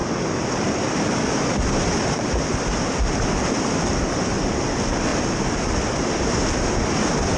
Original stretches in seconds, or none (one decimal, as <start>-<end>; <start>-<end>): 1.5-5.1; 5.7-6.8